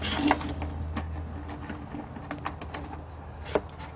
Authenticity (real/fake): real